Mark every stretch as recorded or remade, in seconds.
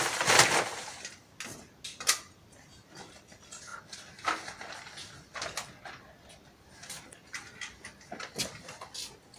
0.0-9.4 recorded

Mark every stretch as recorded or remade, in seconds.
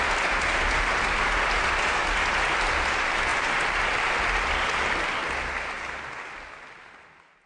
0.0-7.5 recorded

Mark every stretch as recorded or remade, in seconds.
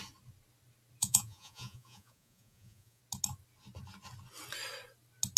0.0-1.0 recorded; 1.0-3.0 remade; 3.0-5.4 recorded